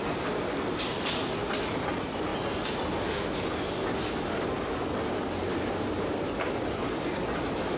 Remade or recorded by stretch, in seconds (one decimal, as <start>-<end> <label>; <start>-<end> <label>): 0.0-7.8 recorded